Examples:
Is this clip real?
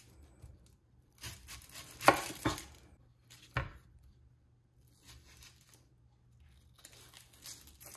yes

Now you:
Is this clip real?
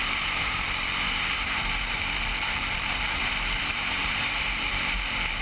no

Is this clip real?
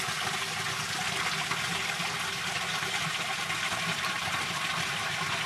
yes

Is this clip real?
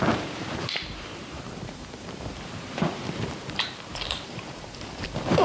no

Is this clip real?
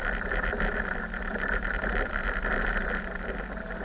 no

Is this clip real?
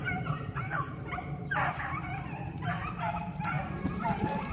no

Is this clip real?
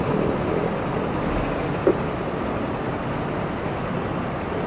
yes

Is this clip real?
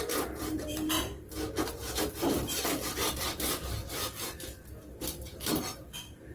no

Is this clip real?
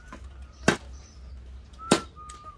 yes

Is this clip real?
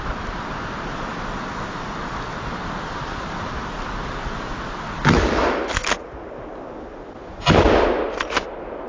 yes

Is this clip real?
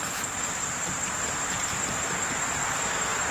yes